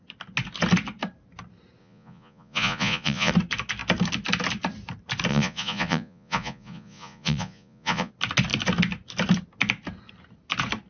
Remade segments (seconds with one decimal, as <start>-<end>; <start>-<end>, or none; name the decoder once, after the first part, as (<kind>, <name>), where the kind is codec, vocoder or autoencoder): 1.8-3.3 (vocoder, Vocos); 5.3-8.1